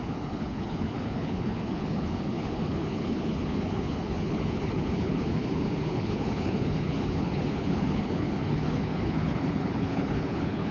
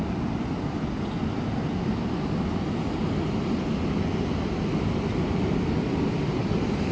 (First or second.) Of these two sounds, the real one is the second